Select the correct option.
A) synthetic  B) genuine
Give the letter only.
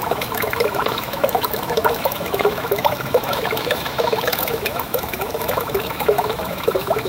A